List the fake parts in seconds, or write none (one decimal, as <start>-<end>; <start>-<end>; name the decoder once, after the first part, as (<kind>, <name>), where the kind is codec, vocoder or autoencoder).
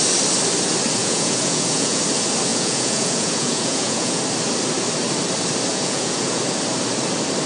1.0-2.0 (vocoder, Vocos); 2.5-4.2; 5.7-6.4